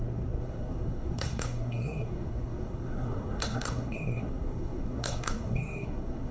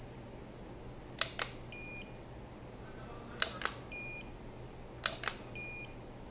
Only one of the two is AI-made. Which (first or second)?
first